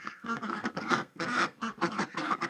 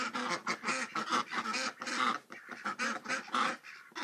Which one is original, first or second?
second